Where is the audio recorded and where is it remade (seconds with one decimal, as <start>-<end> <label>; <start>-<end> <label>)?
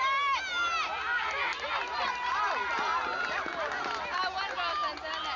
0.0-5.4 recorded